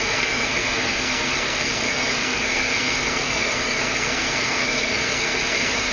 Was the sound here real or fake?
fake